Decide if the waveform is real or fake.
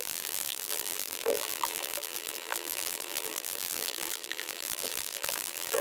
fake